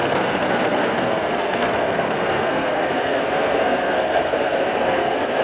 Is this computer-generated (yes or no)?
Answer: yes